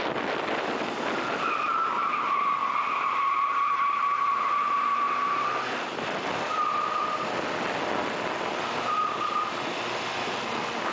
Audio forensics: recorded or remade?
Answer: recorded